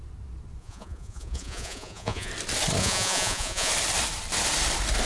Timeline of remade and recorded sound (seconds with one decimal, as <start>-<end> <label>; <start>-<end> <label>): 0.0-0.6 recorded; 0.6-2.3 remade; 2.3-2.8 recorded; 2.8-3.7 remade; 3.7-5.1 recorded